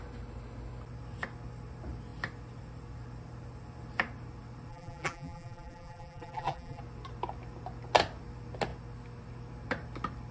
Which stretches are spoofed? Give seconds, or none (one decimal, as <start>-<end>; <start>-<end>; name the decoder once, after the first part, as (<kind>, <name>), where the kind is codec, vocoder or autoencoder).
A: 4.7-6.8 (vocoder, BigVGAN v2)